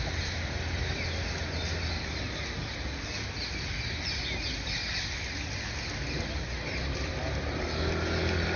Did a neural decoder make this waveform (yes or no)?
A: no